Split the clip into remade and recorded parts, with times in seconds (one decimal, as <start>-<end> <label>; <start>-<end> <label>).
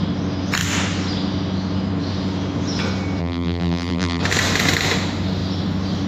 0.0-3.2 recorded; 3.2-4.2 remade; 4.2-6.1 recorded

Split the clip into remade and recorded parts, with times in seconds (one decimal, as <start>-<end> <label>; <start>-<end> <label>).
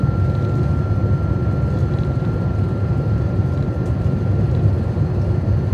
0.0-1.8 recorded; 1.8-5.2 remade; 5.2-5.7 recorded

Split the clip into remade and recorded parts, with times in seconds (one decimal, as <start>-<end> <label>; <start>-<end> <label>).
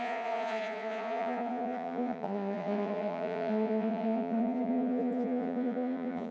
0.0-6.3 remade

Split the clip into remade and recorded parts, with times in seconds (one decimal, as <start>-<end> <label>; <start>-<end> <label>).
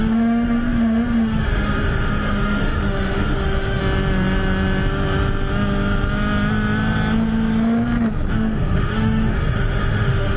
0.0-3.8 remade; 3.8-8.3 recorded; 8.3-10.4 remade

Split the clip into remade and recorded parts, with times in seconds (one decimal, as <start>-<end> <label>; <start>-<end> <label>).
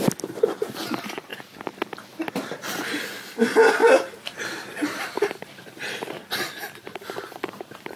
0.0-3.8 recorded; 3.8-8.0 remade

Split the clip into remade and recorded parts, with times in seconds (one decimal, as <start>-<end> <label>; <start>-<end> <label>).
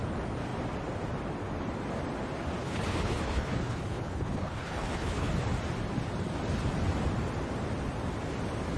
0.0-2.6 recorded; 2.6-5.3 remade; 5.3-8.8 recorded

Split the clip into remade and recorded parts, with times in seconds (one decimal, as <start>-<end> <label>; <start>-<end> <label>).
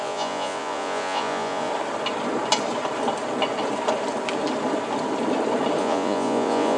0.0-1.7 remade; 1.7-5.8 recorded; 5.8-6.8 remade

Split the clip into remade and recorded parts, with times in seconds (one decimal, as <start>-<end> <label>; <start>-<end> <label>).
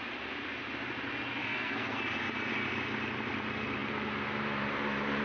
0.0-1.4 recorded; 1.4-2.0 remade; 2.0-5.2 recorded